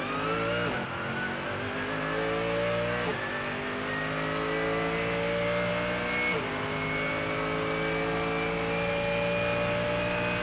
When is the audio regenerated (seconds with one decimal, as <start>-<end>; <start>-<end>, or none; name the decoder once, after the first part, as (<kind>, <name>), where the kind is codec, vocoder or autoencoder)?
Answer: none